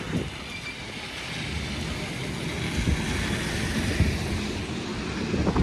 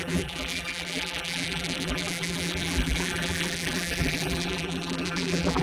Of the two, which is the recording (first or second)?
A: first